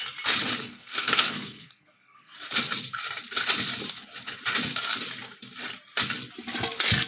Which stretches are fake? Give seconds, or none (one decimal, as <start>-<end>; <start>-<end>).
0.6-2.3